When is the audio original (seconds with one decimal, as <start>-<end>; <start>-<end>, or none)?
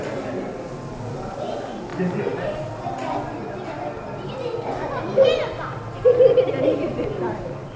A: 0.0-7.8